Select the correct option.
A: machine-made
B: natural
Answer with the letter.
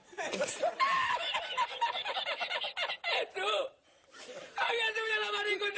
A